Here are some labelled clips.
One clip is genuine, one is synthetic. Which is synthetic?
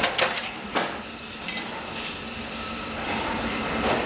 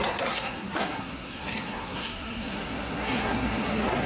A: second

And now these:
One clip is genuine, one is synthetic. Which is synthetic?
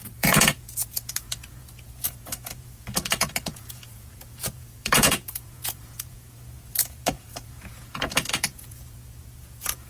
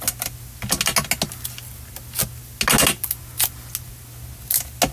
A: first